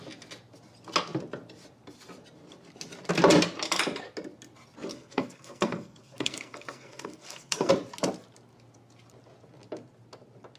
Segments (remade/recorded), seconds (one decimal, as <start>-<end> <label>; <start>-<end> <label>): 0.0-4.9 recorded; 4.9-7.7 remade; 7.7-10.6 recorded

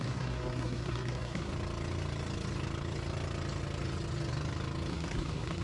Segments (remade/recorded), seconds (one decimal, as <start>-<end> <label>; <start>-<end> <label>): 0.0-1.5 remade; 1.5-4.9 recorded; 4.9-5.6 remade

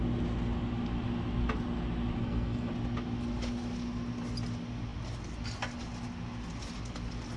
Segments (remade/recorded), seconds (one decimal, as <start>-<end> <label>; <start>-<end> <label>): 0.0-2.2 recorded; 2.2-2.7 remade; 2.7-7.4 recorded

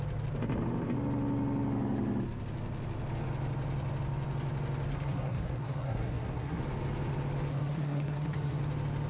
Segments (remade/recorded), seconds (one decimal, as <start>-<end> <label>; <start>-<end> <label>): 0.0-4.9 recorded; 4.9-6.6 remade; 6.6-7.5 recorded; 7.5-8.6 remade; 8.6-9.1 recorded

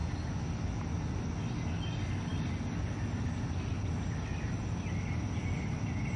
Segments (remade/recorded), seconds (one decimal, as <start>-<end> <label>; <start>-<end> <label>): 0.0-6.2 recorded

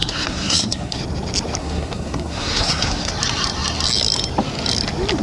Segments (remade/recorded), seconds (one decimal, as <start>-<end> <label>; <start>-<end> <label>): 0.0-1.0 remade; 1.0-1.6 recorded; 1.6-3.1 remade; 3.1-5.2 recorded

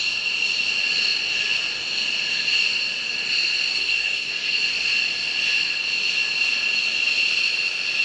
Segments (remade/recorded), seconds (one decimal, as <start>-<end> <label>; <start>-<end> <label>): 0.0-3.7 recorded; 3.7-4.6 remade; 4.6-8.0 recorded

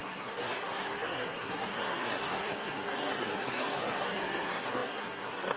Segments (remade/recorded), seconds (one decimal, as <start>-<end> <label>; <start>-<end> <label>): 0.0-5.6 remade